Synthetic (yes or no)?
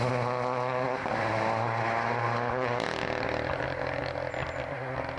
no